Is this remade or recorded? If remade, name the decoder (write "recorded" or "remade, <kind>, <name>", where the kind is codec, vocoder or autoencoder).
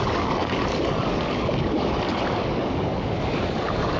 remade, codec, DAC